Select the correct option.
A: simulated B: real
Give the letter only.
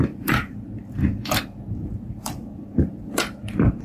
A